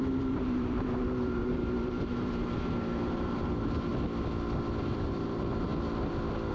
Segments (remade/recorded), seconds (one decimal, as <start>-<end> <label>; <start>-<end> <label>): 0.0-3.9 remade; 3.9-4.8 recorded; 4.8-5.7 remade; 5.7-6.5 recorded